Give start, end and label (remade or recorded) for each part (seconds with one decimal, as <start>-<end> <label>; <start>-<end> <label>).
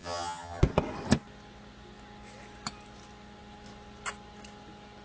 0.0-0.6 remade; 0.6-5.0 recorded